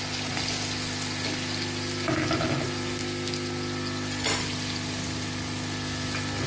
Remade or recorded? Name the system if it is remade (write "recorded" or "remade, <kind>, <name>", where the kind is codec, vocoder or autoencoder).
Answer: recorded